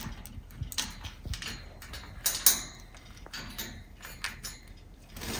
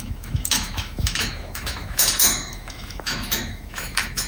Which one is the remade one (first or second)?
second